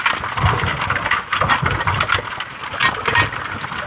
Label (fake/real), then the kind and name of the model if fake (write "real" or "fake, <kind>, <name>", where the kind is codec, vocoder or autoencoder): real